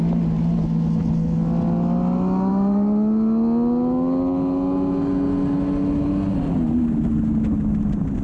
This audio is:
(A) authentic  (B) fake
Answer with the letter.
A